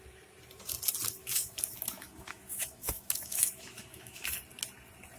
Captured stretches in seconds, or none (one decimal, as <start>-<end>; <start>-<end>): 0.0-1.2; 4.3-5.2